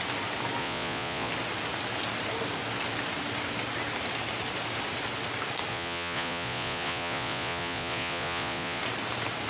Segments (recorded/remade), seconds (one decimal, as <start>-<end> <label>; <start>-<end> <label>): 0.0-0.6 recorded; 0.6-1.3 remade; 1.3-5.7 recorded; 5.7-8.8 remade; 8.8-9.5 recorded